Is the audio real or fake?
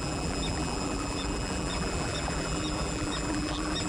fake